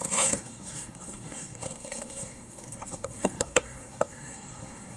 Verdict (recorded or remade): remade